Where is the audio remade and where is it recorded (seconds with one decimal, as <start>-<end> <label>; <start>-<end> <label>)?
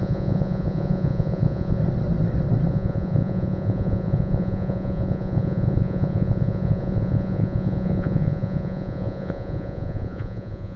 0.0-1.8 remade; 1.8-2.7 recorded; 2.7-10.8 remade